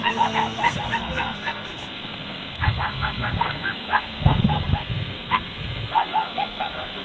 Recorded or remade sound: remade